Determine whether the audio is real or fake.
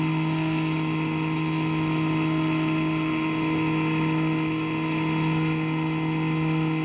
real